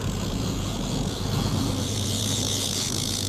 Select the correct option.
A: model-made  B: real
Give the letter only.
A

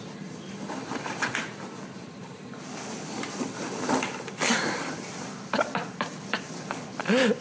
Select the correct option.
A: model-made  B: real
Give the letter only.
A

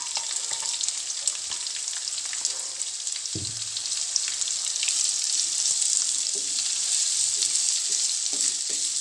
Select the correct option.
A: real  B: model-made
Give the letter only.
A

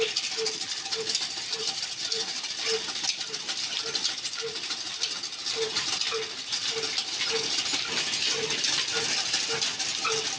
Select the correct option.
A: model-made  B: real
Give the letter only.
B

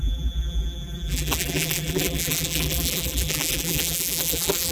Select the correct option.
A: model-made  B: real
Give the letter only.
A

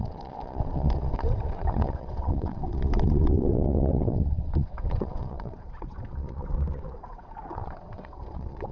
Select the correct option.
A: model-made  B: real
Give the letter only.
A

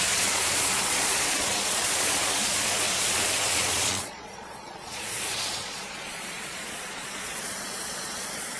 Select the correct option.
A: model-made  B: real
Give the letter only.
A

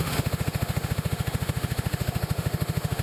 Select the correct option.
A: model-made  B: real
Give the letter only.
A